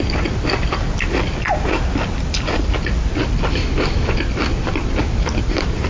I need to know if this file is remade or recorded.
recorded